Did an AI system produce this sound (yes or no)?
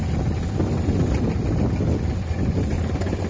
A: no